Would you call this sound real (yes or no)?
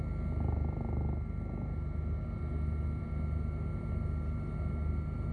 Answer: yes